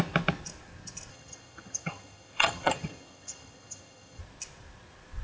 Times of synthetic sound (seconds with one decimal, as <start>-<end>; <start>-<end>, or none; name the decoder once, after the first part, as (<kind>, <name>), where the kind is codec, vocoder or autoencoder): 1.1-4.2 (vocoder, HiFi-GAN)